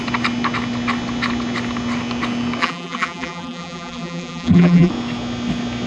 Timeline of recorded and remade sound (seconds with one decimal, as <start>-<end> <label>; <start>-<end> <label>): 0.0-2.6 recorded; 2.6-4.9 remade; 4.9-5.9 recorded